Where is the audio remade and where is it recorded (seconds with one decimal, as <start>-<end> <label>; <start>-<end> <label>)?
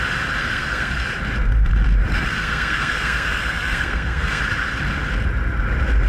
0.0-0.4 recorded; 0.4-1.0 remade; 1.0-2.1 recorded; 2.1-4.4 remade; 4.4-6.1 recorded